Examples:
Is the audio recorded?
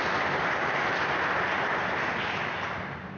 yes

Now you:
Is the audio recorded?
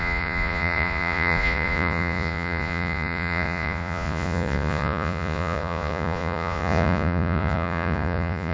no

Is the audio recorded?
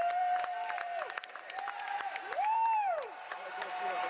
no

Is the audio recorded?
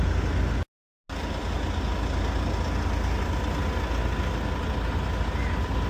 yes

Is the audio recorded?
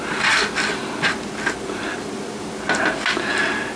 yes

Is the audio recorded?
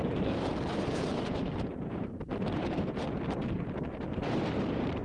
no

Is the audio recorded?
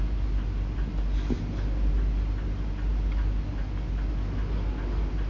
yes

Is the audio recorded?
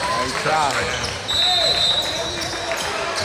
yes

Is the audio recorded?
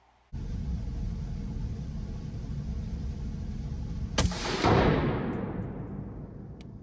yes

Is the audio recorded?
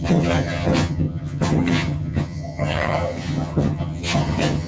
no